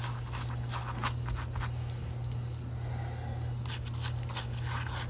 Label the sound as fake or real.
real